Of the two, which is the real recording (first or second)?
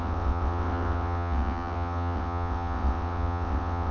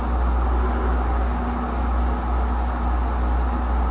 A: second